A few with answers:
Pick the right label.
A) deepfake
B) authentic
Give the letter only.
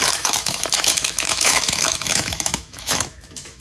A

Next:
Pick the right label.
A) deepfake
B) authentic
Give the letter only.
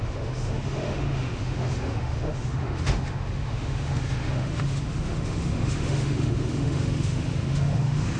A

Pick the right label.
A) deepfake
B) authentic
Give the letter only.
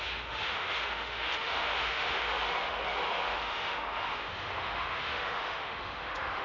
A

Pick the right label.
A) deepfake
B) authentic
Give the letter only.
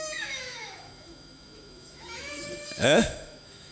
A